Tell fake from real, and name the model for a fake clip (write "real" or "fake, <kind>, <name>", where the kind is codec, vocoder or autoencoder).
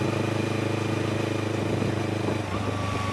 real